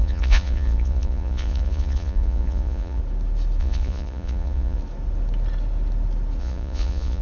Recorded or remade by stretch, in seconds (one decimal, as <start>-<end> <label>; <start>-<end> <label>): 0.0-3.0 remade; 3.0-3.6 recorded; 3.6-4.8 remade; 4.8-6.4 recorded; 6.4-7.2 remade